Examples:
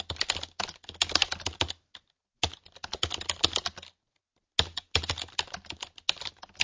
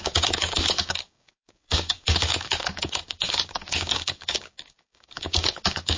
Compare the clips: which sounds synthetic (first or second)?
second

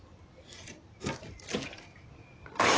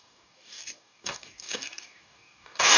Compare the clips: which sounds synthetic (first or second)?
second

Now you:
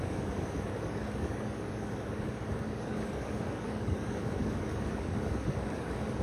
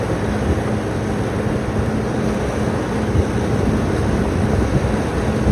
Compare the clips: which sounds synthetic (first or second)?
first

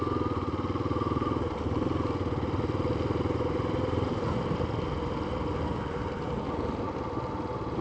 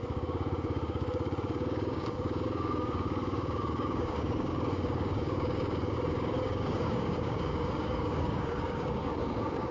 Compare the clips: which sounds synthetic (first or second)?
second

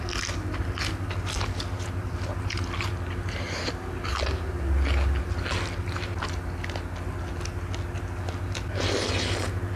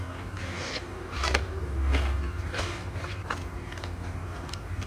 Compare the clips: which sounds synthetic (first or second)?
second